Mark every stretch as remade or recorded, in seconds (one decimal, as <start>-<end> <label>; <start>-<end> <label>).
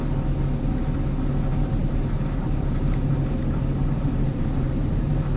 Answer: 0.0-1.3 recorded; 1.3-5.4 remade